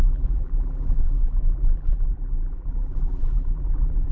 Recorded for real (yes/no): no